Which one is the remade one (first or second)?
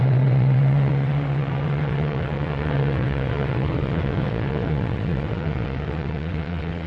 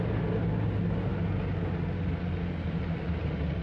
first